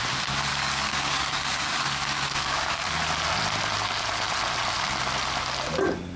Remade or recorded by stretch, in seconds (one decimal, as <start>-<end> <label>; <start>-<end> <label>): 0.0-0.5 recorded; 0.5-3.0 remade; 3.0-6.2 recorded